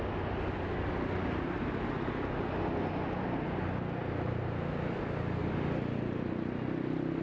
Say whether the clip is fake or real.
real